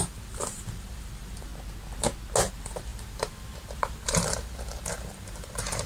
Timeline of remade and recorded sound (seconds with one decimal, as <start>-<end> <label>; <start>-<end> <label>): 0.0-1.5 remade; 1.5-2.5 recorded; 2.5-5.9 remade